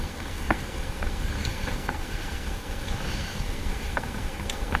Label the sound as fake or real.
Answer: fake